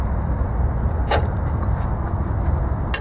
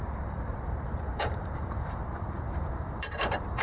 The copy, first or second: second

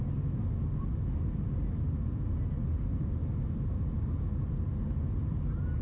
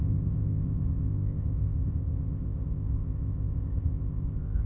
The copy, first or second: second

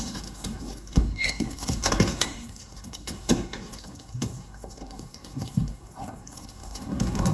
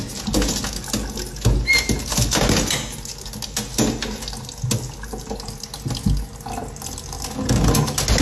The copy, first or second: first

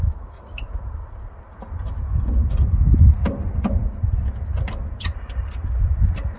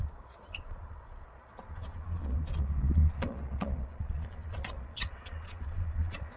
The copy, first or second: second